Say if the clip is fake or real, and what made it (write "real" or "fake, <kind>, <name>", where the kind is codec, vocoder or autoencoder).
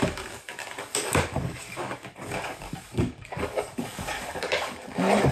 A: fake, codec, DAC